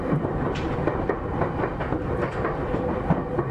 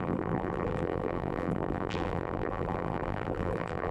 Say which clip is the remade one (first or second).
second